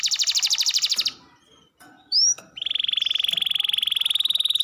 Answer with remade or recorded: recorded